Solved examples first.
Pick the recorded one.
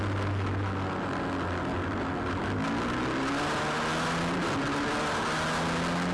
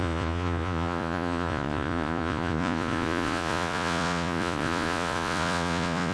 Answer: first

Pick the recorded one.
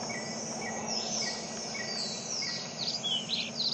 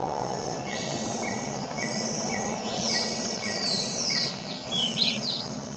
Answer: first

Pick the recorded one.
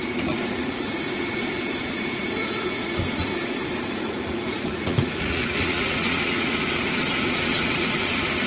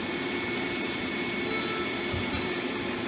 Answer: second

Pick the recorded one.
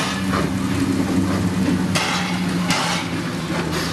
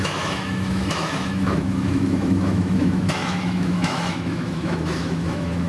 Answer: first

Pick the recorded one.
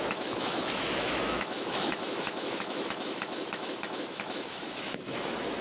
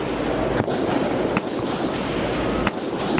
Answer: second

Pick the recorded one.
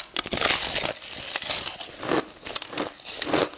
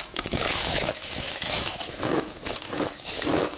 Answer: first